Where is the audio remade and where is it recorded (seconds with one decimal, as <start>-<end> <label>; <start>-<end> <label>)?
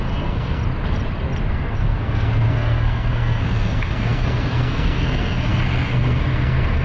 0.0-0.6 remade; 0.6-1.5 recorded; 1.5-6.8 remade